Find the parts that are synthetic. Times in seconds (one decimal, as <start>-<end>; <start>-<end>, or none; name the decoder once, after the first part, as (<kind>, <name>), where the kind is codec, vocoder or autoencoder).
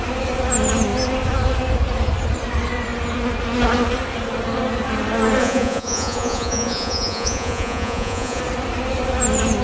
5.4-8.4 (vocoder, Vocos)